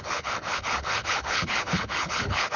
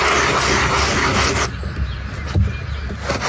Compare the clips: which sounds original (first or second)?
second